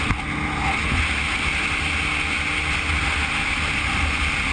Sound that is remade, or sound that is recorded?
recorded